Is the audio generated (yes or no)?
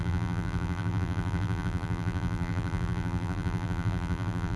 yes